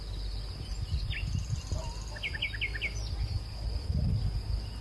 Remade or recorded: recorded